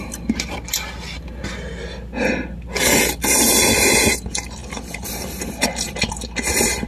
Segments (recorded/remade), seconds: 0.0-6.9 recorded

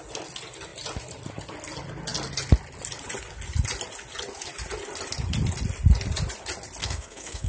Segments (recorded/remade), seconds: 0.0-6.8 recorded; 6.8-7.5 remade

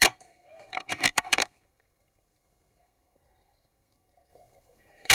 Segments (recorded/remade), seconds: 0.0-5.1 remade

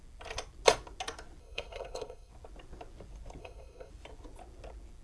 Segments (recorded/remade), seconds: 0.0-1.4 recorded; 1.4-2.3 remade; 2.3-3.4 recorded; 3.4-3.9 remade; 3.9-5.0 recorded

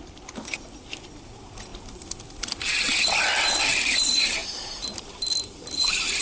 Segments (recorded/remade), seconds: 0.0-6.2 recorded

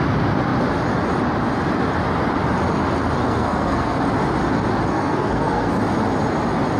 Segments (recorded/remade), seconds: 0.0-3.2 recorded; 3.2-4.0 remade; 4.0-4.9 recorded; 4.9-5.8 remade; 5.8-6.8 recorded

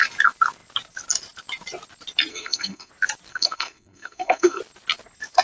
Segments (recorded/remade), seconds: 0.0-2.3 recorded; 2.3-2.9 remade; 2.9-3.3 recorded; 3.3-4.6 remade; 4.6-5.4 recorded